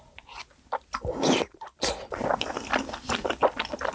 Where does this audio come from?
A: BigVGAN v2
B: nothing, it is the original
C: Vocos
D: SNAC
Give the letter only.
B